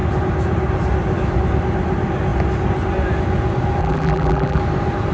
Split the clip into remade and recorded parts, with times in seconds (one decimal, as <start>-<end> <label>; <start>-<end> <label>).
0.0-3.8 recorded; 3.8-4.6 remade; 4.6-5.1 recorded